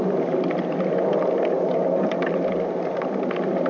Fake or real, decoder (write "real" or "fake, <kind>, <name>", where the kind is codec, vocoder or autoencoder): real